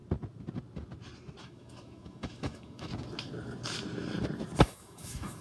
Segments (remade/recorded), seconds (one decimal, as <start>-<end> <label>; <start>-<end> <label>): 0.0-1.4 recorded; 1.4-2.9 remade; 2.9-4.6 recorded; 4.6-5.4 remade